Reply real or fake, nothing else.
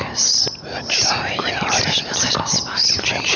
real